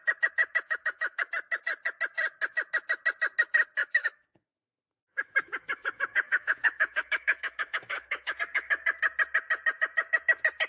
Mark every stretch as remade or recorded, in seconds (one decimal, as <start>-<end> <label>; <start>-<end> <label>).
0.0-0.4 recorded; 0.4-1.3 remade; 1.3-3.8 recorded; 3.8-8.4 remade; 8.4-10.7 recorded